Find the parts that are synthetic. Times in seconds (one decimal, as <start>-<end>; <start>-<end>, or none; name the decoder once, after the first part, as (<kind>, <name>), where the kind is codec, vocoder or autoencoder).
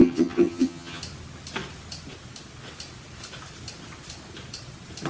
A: 0.0-1.0 (vocoder, HiFi-GAN)